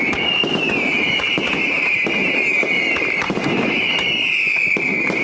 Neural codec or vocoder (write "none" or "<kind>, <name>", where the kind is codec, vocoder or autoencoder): vocoder, BigVGAN v2